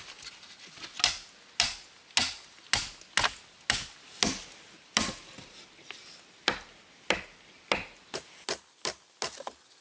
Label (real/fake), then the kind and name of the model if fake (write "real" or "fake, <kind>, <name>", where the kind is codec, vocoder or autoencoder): real